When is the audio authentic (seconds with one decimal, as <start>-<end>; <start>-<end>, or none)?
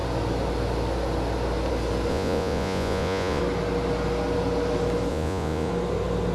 0.0-2.1; 3.4-5.1; 5.7-6.3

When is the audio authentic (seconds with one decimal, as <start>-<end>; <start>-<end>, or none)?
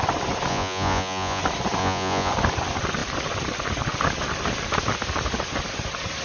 0.0-0.5; 1.4-1.8; 2.3-6.2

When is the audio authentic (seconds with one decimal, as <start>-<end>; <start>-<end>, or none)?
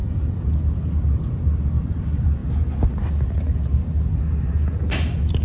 0.0-5.4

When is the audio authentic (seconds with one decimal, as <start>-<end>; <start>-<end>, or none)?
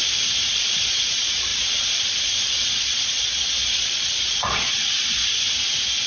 0.0-0.5; 5.2-6.1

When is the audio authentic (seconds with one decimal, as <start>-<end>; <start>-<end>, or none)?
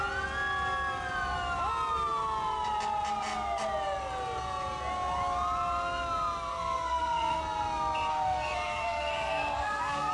0.0-6.5; 7.4-8.1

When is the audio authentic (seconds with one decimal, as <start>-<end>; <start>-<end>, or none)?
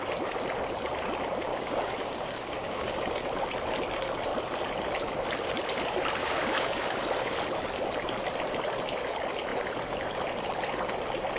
0.0-1.5; 2.9-6.2; 7.0-11.4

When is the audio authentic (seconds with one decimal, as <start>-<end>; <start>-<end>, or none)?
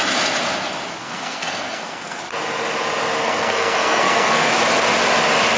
0.0-1.0; 2.2-3.2; 4.5-5.6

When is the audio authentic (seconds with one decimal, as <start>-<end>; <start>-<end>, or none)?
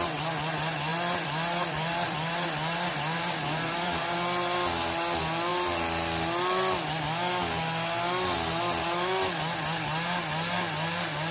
0.0-0.9; 4.0-11.3